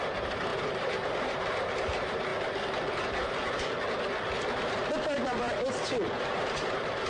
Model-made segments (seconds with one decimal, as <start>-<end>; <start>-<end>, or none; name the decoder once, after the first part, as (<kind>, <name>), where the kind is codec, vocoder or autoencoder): 0.0-2.3 (vocoder, BigVGAN v2); 6.2-7.1